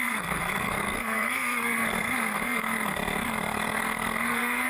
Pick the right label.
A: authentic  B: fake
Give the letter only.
B